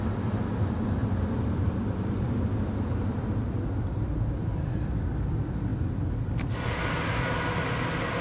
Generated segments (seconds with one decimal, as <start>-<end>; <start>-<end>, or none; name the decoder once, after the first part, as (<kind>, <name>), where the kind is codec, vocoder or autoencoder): 1.0-2.4 (vocoder, BigVGAN v2); 5.7-6.8